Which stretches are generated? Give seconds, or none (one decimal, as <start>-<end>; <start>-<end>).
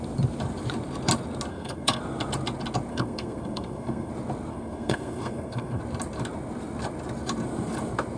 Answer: 1.5-2.0; 2.9-4.1; 4.5-5.8